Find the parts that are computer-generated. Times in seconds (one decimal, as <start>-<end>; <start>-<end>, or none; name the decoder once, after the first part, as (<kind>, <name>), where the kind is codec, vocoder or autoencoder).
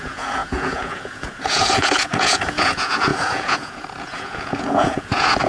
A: 0.0-5.5 (vocoder, Vocos)